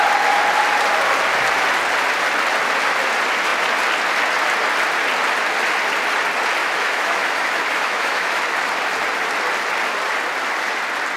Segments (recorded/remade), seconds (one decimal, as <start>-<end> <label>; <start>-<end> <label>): 0.0-6.6 recorded; 6.6-8.4 remade; 8.4-11.2 recorded